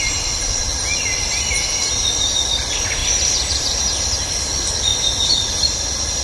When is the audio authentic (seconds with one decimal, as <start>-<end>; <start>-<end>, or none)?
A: 0.0-3.0; 4.0-6.2